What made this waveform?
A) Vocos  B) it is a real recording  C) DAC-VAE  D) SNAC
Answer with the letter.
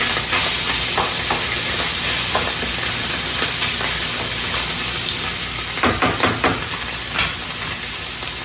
B